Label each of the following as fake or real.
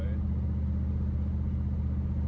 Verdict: real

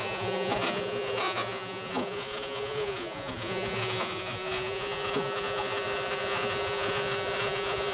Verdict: fake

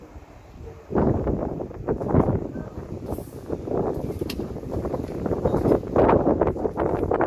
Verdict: real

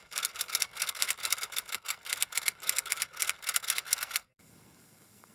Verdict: fake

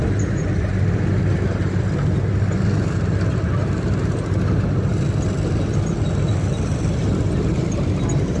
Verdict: real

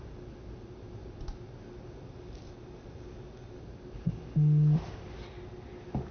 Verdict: real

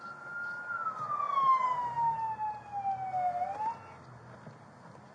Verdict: real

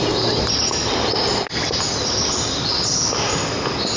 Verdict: real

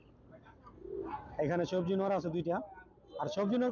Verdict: real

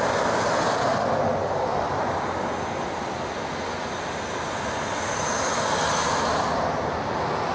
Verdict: real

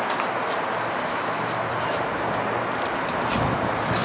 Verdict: real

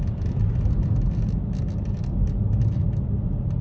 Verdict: real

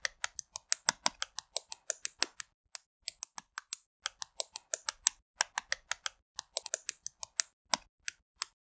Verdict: real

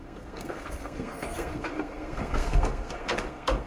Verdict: fake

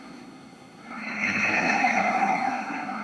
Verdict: fake